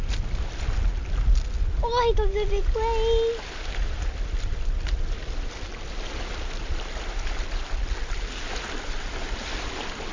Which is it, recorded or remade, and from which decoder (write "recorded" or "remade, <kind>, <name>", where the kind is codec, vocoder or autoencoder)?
recorded